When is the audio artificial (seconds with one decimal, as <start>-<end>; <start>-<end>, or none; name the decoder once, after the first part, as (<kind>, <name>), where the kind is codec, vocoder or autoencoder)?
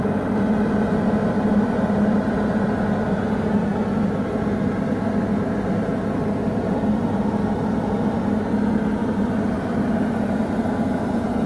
none